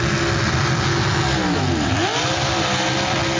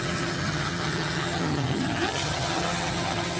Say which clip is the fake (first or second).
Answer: second